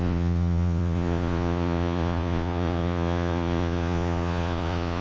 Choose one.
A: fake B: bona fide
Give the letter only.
A